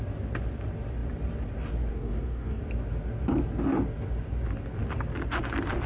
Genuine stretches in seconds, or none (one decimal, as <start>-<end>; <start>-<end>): 0.0-1.9; 2.6-5.9

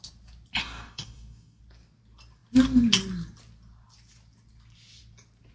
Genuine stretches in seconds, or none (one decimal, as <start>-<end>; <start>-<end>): 0.0-0.6; 1.6-5.5

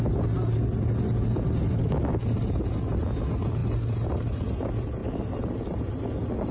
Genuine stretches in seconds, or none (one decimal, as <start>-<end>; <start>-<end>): 0.0-6.5

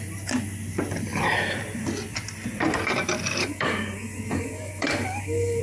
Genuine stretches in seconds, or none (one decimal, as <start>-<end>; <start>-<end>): 0.0-3.4

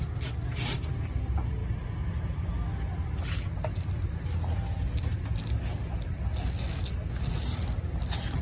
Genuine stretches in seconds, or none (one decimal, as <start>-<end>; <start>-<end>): 0.0-8.4

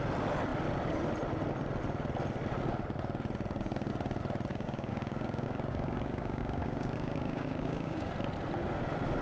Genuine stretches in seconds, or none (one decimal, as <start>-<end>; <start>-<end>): 0.0-4.5; 8.1-9.2

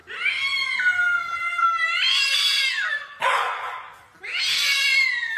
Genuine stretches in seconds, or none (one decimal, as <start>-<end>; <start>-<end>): 0.0-5.4